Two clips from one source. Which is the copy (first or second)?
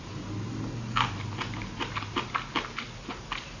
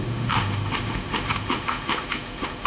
second